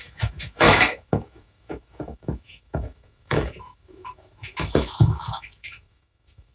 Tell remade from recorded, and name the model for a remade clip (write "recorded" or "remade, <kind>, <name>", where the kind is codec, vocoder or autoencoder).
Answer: remade, autoencoder, DAC-VAE